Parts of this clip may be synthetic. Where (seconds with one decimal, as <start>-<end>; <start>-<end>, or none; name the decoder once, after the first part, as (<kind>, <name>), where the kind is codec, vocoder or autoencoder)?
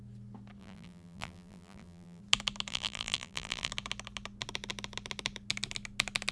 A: 0.6-2.2 (vocoder, BigVGAN v2); 2.7-3.7